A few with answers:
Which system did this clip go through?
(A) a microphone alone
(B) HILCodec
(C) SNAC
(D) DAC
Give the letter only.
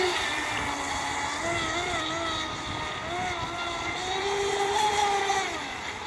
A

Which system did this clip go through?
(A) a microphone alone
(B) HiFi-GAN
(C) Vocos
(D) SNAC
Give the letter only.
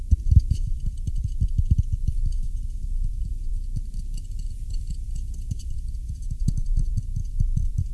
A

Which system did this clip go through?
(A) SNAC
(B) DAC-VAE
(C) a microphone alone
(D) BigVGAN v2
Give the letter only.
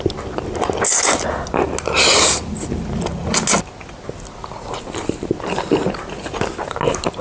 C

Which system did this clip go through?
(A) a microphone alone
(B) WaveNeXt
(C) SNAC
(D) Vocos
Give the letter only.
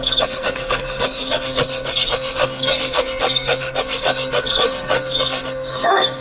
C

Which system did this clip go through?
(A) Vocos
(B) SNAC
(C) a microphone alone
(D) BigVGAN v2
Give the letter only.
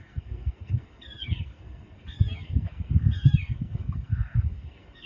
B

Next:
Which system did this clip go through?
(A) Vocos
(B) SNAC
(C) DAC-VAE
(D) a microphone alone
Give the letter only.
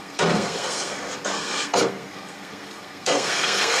B